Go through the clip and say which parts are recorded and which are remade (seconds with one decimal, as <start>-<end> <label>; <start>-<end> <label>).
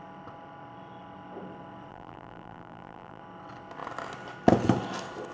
0.0-1.9 recorded; 1.9-3.2 remade; 3.2-5.3 recorded